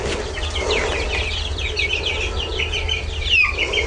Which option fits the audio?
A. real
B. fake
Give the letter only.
A